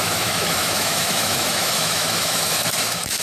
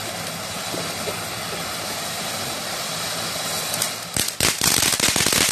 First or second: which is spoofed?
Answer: first